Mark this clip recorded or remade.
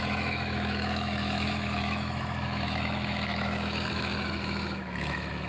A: remade